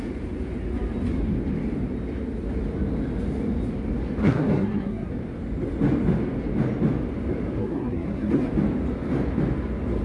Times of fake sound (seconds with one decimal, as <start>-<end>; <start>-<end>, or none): 4.2-5.1; 7.6-8.5

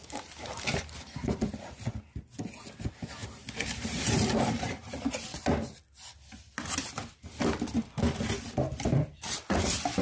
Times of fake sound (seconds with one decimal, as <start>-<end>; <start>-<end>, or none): 0.0-1.7; 3.2-5.1

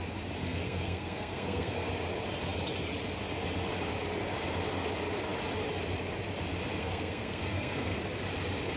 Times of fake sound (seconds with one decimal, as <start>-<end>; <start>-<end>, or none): 0.4-1.9; 6.8-8.0